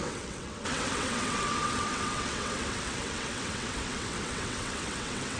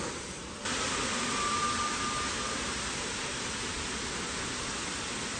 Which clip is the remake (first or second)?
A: first